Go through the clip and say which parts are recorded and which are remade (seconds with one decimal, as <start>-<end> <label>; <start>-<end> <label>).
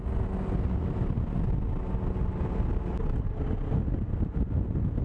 0.0-5.0 recorded